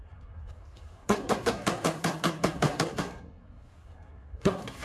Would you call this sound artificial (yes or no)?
yes